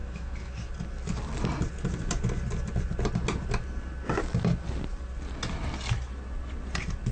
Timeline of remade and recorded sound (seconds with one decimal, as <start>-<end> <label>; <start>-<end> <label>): 0.0-0.7 remade; 0.7-7.1 recorded